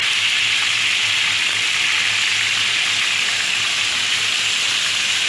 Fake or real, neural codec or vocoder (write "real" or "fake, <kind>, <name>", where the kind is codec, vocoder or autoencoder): real